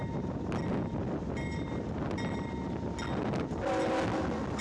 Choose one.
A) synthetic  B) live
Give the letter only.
B